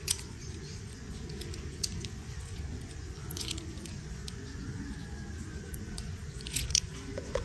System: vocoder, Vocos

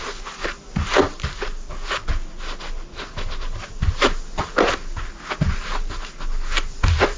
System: none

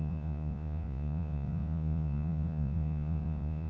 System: vocoder, Vocos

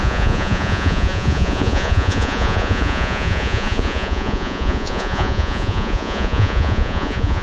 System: vocoder, Vocos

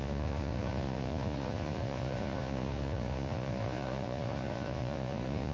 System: vocoder, Vocos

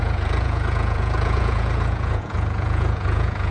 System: vocoder, Vocos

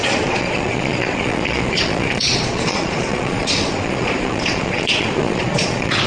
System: vocoder, Vocos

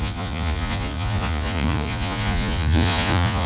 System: vocoder, Vocos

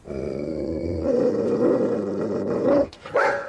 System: vocoder, Vocos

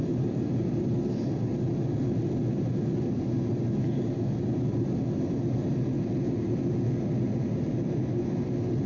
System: none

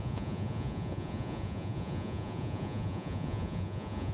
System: vocoder, Vocos